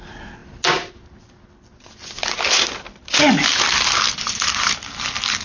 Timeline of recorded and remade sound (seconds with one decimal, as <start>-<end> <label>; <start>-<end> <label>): 0.0-5.4 recorded